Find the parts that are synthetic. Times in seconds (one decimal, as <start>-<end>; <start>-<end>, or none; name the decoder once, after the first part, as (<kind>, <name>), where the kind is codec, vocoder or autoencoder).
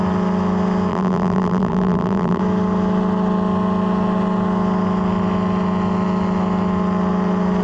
0.9-2.4 (vocoder, BigVGAN v2)